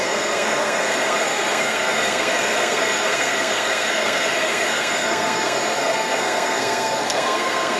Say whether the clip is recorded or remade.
remade